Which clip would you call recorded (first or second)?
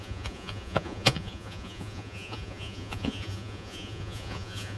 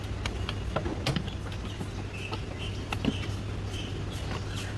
second